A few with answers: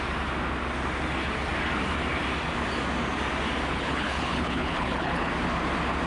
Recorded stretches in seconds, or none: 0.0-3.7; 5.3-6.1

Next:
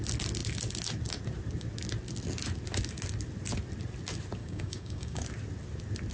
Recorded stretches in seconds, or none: 0.0-4.4; 5.2-6.1

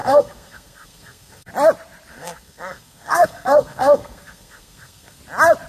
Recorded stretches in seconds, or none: 1.5-2.1; 5.2-5.7

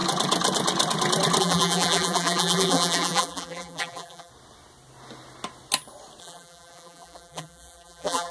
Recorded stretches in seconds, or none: 0.0-1.4; 4.3-6.2

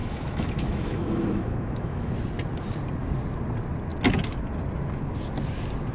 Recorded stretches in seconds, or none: 2.1-5.9

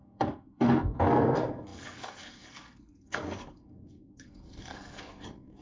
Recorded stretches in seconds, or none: none